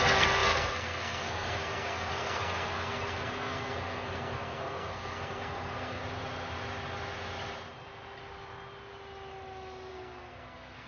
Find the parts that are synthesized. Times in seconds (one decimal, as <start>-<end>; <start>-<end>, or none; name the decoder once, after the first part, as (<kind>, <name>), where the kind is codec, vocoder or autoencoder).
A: 0.0-6.0 (codec, SNAC); 9.9-10.9